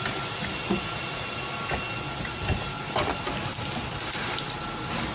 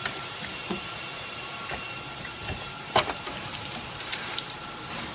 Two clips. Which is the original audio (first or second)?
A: first